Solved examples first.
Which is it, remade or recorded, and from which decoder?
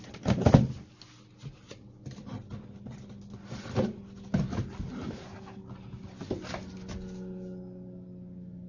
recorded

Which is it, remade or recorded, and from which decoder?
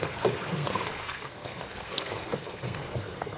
remade, codec, SNAC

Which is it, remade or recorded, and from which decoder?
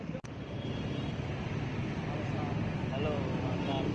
recorded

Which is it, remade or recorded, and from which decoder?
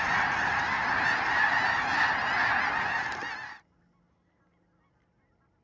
recorded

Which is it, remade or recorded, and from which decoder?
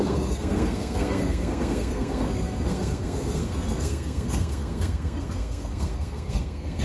remade, codec, SNAC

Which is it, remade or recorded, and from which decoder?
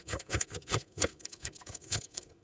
remade, codec, SNAC